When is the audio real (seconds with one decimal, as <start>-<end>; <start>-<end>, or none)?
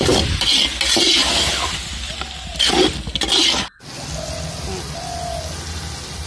0.0-6.3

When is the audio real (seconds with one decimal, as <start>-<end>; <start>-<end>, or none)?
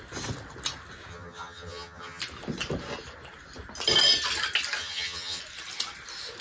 0.0-1.1; 2.2-4.8; 5.4-6.4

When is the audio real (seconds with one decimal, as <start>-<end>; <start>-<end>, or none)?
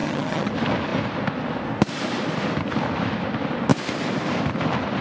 0.5-5.0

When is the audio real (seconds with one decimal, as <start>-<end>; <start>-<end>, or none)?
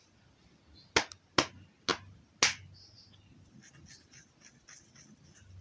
0.0-5.6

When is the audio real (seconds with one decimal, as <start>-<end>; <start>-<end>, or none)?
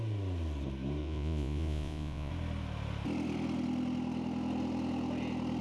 0.0-1.0; 2.3-5.6